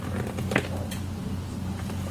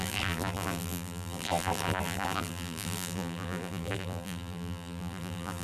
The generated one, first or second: second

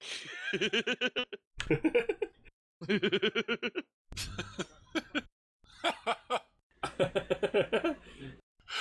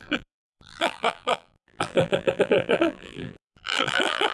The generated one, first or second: second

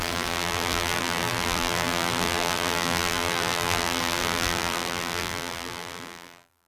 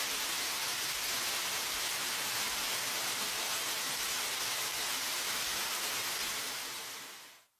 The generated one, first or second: first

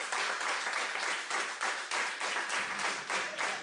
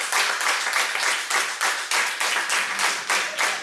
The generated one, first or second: first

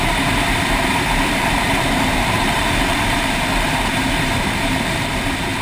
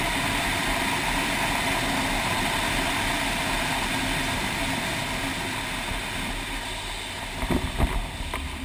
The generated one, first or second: first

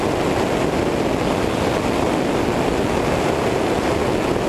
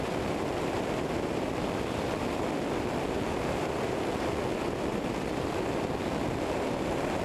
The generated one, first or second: second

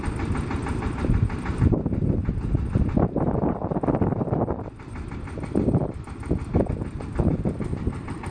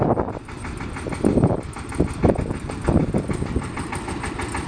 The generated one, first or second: first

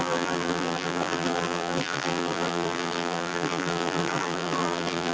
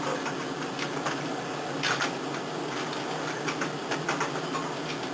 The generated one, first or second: first